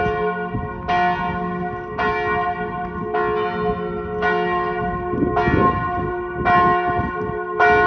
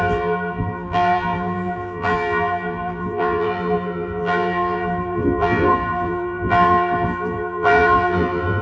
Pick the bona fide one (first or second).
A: first